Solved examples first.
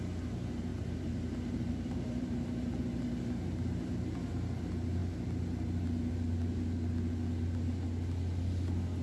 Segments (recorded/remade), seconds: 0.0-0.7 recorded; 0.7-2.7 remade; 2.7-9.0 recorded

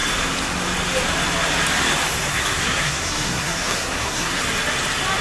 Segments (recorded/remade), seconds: 0.0-2.3 recorded; 2.3-4.4 remade; 4.4-5.2 recorded

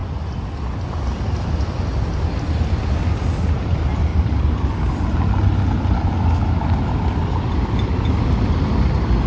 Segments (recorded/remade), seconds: 0.0-4.1 recorded; 4.1-4.9 remade; 4.9-9.3 recorded